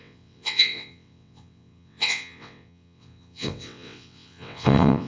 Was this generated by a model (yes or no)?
yes